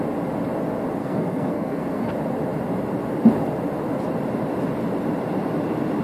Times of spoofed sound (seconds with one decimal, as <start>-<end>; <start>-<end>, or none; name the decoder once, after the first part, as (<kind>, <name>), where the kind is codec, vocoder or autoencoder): 1.0-2.1 (codec, SNAC)